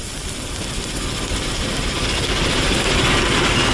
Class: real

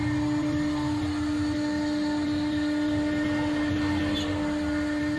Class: real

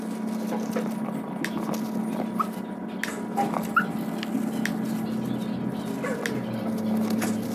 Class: real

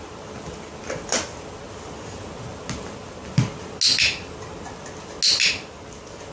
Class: real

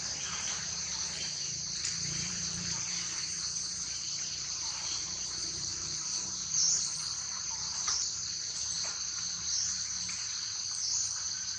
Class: fake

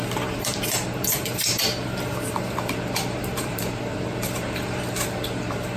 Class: fake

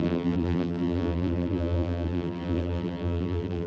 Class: fake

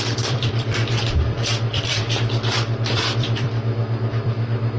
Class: fake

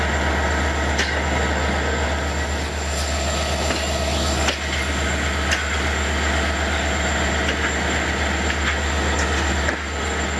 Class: real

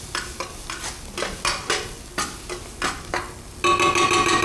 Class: real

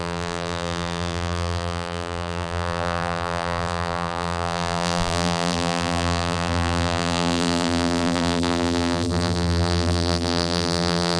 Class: fake